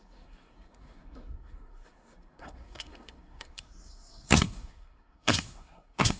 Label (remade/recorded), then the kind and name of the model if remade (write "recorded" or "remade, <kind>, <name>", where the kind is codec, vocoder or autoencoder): remade, codec, SNAC